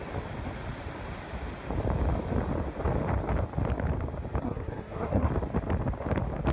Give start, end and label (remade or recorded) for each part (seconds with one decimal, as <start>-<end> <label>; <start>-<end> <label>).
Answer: 0.0-4.4 recorded; 4.4-5.3 remade; 5.3-6.5 recorded